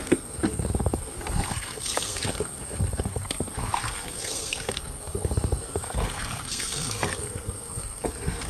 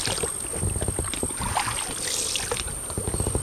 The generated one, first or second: first